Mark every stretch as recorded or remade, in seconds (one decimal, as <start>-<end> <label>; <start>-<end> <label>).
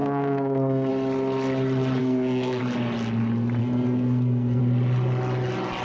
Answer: 0.0-0.9 remade; 0.9-2.0 recorded; 2.0-2.6 remade; 2.6-3.6 recorded; 3.6-4.6 remade; 4.6-5.8 recorded